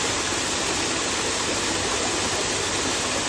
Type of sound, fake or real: real